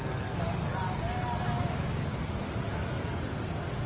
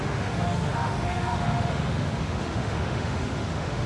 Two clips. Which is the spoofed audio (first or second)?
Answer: second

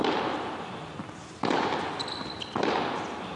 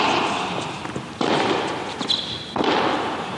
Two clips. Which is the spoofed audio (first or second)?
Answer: second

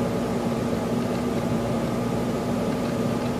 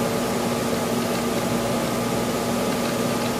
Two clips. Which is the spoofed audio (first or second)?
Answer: first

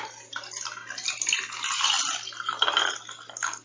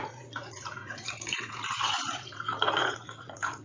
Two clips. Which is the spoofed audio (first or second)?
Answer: second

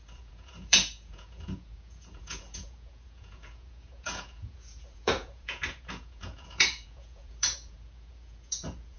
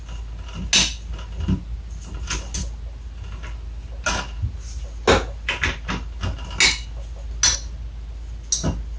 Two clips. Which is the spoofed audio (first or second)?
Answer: first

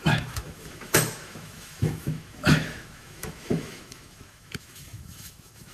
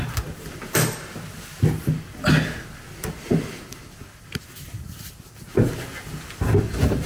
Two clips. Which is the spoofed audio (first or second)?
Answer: first